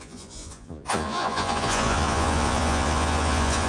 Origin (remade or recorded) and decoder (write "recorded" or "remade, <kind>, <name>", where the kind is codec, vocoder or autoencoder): remade, vocoder, Vocos